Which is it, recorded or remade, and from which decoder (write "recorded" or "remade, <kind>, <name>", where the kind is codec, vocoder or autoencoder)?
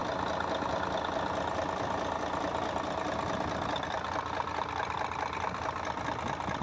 recorded